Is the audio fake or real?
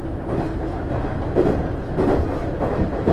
real